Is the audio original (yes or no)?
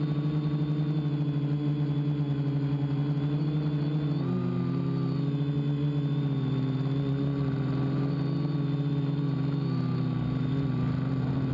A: yes